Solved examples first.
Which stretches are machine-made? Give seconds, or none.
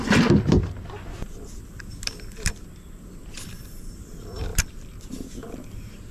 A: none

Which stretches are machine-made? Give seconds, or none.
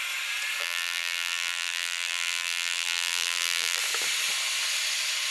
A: 0.6-3.8 (vocoder, BigVGAN v2)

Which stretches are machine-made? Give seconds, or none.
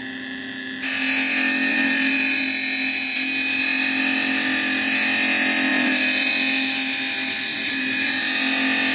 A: 1.7-2.4 (vocoder, BigVGAN v2); 5.7-6.3; 7.5-8.1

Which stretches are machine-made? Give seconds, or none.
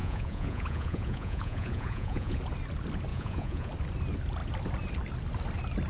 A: 0.0-2.4 (vocoder, Vocos); 3.1-3.7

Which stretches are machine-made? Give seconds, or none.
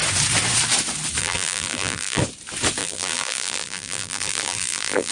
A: 1.2-2.2 (vocoder, BigVGAN v2); 2.8-5.1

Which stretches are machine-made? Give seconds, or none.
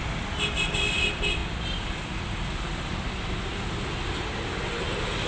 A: none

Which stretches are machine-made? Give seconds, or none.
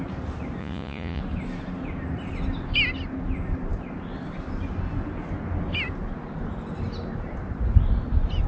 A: 0.6-1.2 (vocoder, Vocos)